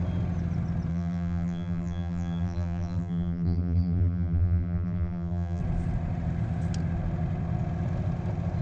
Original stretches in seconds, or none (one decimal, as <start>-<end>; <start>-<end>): 0.0-0.9; 5.6-8.6